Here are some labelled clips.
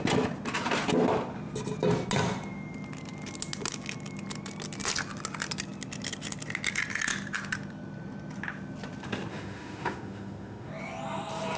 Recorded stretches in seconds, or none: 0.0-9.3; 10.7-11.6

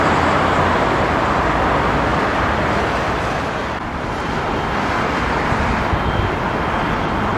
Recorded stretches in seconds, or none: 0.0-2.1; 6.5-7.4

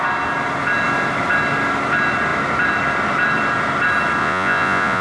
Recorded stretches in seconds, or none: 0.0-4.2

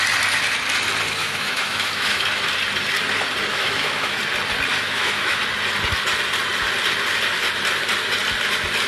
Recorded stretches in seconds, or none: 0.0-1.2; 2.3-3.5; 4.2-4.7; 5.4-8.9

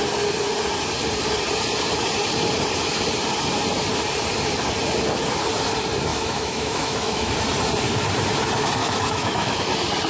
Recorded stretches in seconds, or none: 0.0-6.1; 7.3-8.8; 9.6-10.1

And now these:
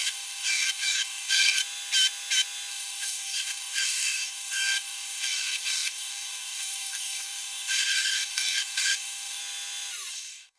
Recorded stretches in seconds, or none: 1.6-2.7; 9.4-10.1

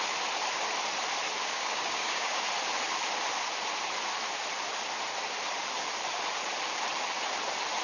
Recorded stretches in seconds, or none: 0.0-1.4; 2.4-7.8